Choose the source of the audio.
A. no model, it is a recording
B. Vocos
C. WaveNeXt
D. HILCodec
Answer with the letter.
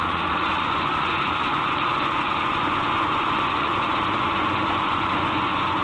B